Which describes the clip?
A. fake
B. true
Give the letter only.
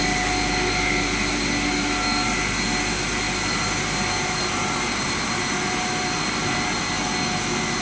B